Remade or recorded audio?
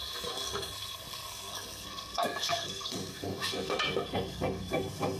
remade